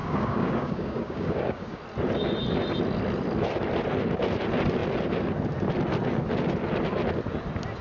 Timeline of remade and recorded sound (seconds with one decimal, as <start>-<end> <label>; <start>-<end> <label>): 0.0-1.8 remade; 1.8-7.8 recorded